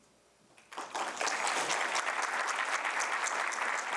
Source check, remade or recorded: recorded